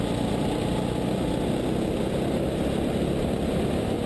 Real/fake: real